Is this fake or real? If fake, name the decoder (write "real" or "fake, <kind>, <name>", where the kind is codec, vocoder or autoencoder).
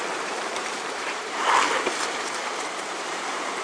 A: fake, vocoder, BigVGAN v2